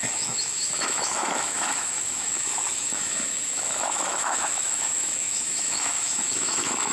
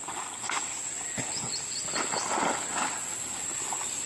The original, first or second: second